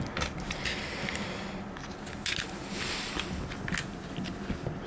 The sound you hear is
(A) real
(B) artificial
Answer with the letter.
A